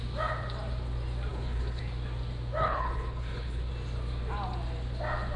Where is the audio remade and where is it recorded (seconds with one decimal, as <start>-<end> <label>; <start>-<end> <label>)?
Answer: 0.0-1.3 recorded; 1.3-1.8 remade; 1.8-2.6 recorded; 2.6-3.7 remade; 3.7-5.4 recorded